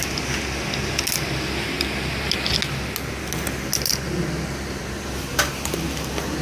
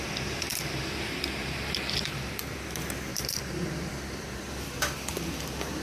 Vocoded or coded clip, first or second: second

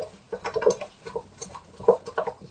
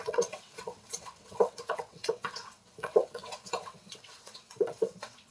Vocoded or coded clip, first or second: second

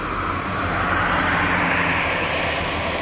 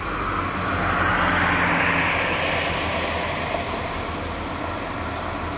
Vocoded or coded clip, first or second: first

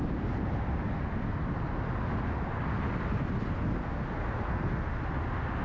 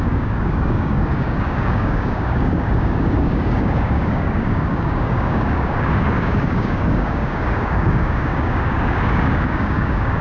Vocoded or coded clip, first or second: second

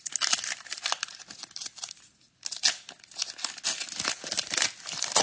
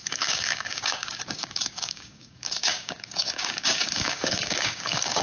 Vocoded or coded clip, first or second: second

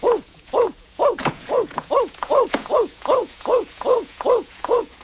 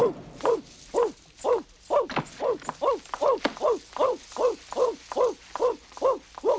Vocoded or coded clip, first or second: first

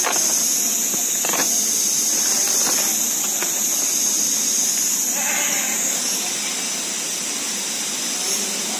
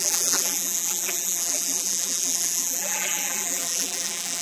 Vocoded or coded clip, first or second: second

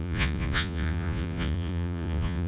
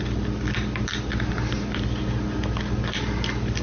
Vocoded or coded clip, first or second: first